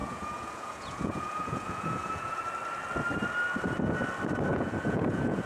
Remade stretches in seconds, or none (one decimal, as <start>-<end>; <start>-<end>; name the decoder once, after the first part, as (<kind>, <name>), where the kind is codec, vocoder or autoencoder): 0.0-2.4 (vocoder, Vocos); 4.5-5.5